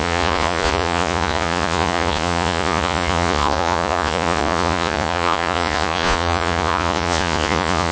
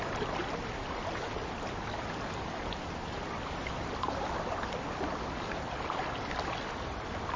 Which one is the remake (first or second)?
first